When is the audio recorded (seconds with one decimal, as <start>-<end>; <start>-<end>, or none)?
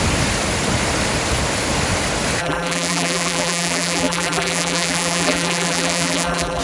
0.0-2.4